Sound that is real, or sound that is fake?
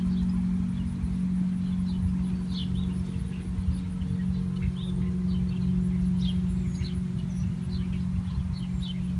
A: real